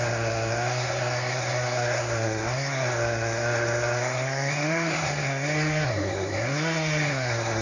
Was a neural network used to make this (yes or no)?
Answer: yes